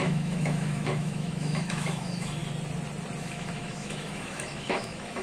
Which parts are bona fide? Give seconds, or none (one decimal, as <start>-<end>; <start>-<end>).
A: 2.4-3.2